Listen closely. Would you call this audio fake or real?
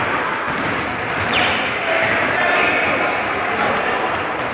fake